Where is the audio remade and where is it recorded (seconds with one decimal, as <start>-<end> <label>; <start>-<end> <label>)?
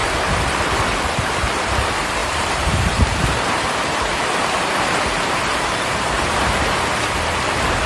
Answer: 0.0-2.2 recorded; 2.2-6.9 remade; 6.9-7.9 recorded